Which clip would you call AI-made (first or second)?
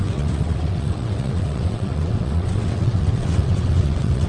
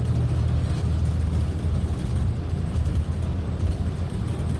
first